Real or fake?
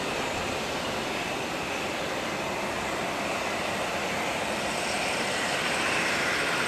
real